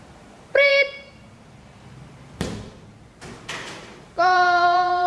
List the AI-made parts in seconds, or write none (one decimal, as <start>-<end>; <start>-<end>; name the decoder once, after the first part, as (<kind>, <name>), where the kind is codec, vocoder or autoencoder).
0.0-5.1 (vocoder, BigVGAN v2)